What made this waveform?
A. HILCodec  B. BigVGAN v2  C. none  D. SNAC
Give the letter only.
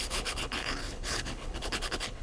A